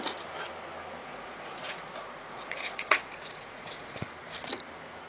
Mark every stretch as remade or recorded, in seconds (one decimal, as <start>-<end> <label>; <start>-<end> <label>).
0.0-1.0 recorded; 1.0-4.1 remade; 4.1-5.1 recorded